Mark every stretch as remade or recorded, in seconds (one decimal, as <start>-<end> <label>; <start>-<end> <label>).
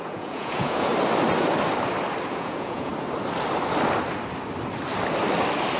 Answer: 0.0-0.9 remade; 0.9-2.3 recorded; 2.3-2.9 remade; 2.9-5.8 recorded